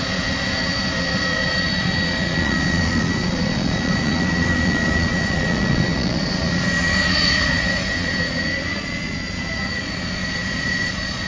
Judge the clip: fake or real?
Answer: fake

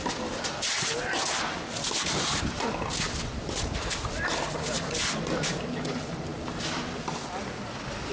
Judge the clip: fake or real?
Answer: real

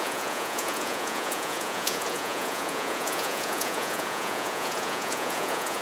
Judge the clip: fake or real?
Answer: fake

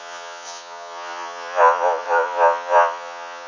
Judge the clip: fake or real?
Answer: fake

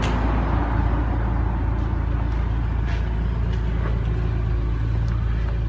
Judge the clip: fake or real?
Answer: real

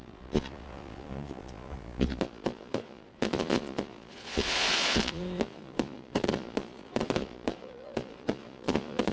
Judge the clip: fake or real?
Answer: fake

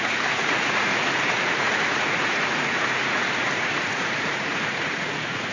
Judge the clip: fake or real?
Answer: fake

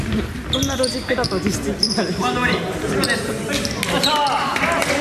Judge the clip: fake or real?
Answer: real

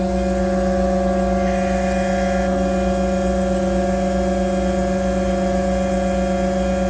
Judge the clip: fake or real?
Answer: real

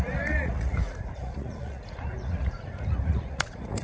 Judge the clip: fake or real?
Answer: fake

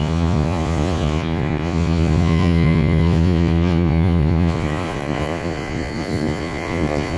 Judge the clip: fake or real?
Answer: fake